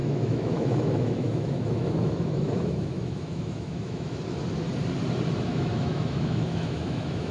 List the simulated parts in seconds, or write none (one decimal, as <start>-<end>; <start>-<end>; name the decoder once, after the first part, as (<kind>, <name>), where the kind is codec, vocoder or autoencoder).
0.0-4.2 (autoencoder, DAC-VAE); 5.5-7.3